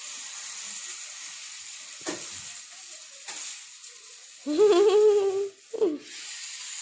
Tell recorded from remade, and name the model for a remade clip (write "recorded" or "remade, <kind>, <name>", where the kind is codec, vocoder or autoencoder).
recorded